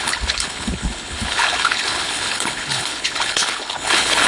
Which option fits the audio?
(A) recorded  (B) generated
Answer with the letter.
B